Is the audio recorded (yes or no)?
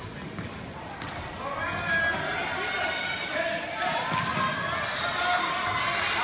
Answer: yes